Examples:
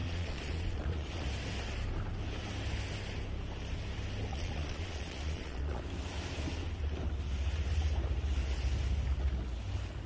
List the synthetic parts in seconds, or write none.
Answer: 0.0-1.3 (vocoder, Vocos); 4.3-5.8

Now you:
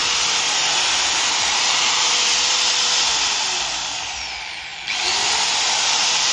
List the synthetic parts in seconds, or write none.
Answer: 0.9-6.3 (vocoder, BigVGAN v2)